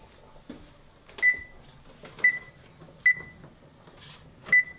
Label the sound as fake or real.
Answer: real